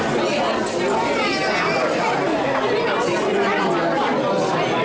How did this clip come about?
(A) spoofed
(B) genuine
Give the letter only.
B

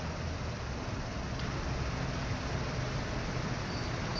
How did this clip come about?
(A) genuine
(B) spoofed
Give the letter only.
A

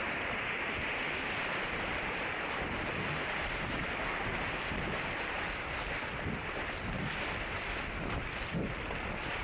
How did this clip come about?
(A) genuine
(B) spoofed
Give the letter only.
A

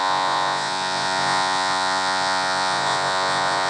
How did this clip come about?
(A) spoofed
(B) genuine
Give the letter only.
A